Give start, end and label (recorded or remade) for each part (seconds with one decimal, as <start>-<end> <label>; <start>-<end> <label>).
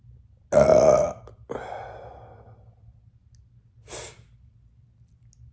0.0-5.5 recorded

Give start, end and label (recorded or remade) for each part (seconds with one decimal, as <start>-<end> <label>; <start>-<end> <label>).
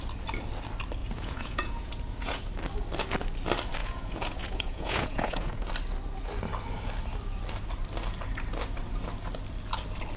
0.0-1.0 recorded; 1.0-2.4 remade; 2.4-3.8 recorded; 3.8-5.7 remade; 5.7-10.2 recorded